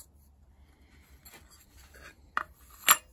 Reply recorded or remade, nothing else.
recorded